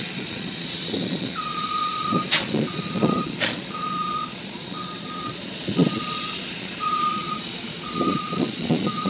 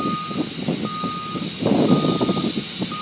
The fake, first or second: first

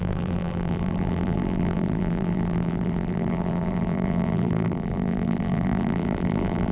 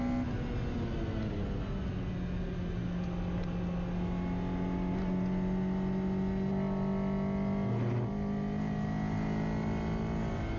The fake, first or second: first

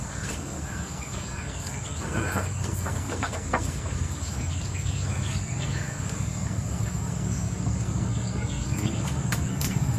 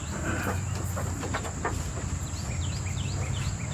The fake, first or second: first